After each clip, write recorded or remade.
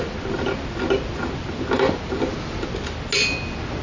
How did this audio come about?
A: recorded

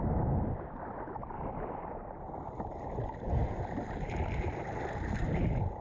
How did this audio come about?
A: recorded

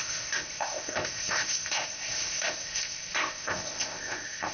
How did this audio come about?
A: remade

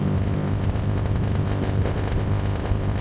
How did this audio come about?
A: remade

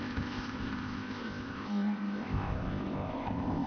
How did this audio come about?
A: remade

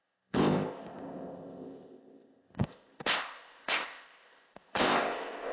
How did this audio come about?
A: remade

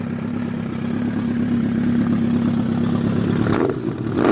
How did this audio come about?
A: recorded